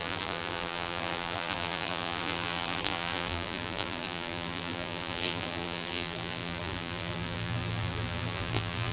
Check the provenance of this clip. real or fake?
fake